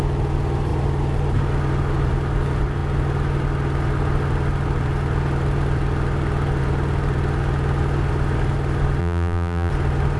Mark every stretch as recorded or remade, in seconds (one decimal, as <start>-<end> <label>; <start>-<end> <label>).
0.0-9.0 recorded; 9.0-9.7 remade; 9.7-10.2 recorded